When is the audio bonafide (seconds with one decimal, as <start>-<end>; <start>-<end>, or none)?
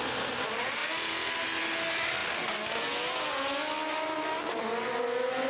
0.0-5.5